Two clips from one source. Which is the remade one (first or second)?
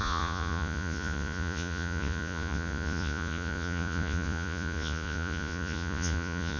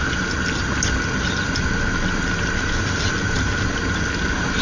first